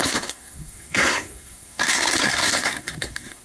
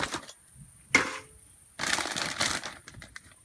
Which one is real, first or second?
second